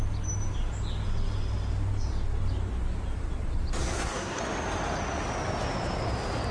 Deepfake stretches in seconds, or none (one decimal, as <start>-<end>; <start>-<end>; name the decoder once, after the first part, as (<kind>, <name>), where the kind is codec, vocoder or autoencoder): 3.8-4.4 (codec, SNAC)

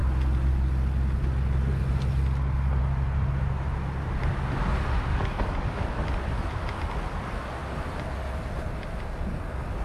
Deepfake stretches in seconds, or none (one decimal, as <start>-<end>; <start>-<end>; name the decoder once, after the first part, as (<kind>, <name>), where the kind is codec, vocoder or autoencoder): 5.1-5.8 (codec, DAC)

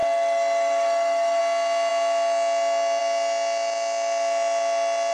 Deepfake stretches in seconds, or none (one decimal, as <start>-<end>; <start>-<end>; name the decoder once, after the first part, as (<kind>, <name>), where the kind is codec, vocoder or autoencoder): 0.0-1.4 (autoencoder, DAC-VAE)